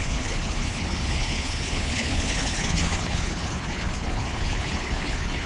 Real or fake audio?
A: fake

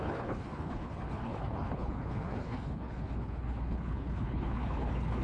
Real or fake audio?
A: fake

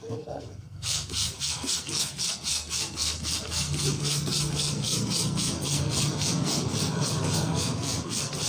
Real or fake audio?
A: fake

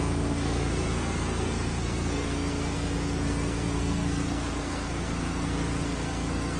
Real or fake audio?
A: fake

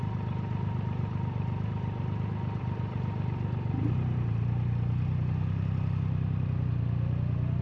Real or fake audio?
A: real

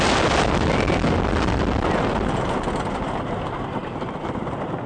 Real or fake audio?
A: real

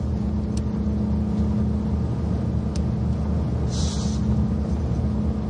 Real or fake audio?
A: real